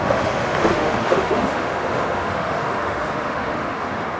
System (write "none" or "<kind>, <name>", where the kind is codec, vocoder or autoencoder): autoencoder, DAC-VAE